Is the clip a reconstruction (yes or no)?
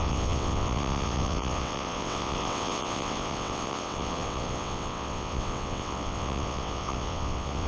yes